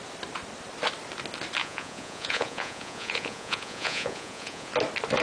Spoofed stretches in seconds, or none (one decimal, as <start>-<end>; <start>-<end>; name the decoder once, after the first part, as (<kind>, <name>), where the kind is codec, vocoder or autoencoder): 1.6-4.7 (vocoder, Vocos)